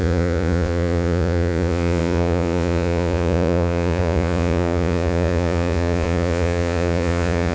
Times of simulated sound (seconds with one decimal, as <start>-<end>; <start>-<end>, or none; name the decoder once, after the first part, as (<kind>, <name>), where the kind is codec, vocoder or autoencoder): 0.0-7.5 (vocoder, Vocos)